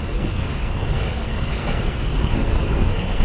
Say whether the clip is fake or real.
fake